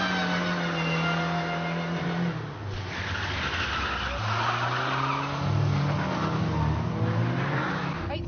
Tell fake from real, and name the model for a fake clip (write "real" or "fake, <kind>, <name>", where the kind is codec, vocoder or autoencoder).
real